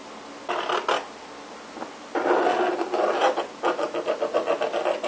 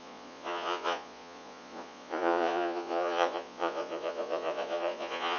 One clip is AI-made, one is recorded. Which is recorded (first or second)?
first